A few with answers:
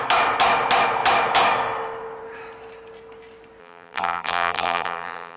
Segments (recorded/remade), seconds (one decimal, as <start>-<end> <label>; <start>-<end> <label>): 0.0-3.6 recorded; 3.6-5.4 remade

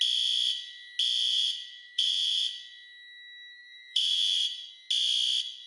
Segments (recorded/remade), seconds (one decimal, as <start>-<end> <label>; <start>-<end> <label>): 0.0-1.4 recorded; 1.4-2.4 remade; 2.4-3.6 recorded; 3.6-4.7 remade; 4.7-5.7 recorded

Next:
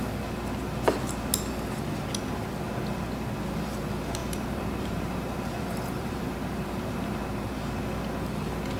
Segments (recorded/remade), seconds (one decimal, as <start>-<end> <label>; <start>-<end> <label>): 0.0-4.2 recorded; 4.2-7.1 remade; 7.1-8.8 recorded

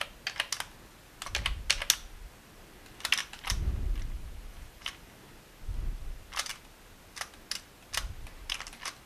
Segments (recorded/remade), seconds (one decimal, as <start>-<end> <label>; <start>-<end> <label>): 0.0-3.2 recorded; 3.2-5.2 remade; 5.2-9.1 recorded

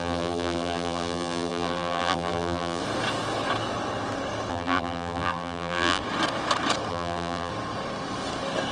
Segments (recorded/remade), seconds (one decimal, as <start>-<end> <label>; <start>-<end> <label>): 0.0-2.8 remade; 2.8-4.5 recorded; 4.5-6.0 remade; 6.0-6.9 recorded; 6.9-7.5 remade; 7.5-8.7 recorded